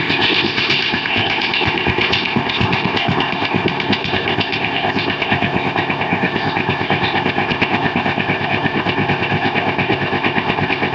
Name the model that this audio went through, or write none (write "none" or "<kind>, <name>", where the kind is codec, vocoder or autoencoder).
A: codec, ZipCodec